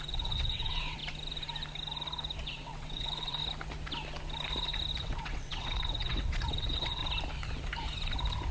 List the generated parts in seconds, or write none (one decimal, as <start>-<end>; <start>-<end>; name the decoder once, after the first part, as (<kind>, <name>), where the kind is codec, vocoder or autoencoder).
0.0-1.0 (vocoder, WaveNeXt); 2.4-3.4; 5.0-7.0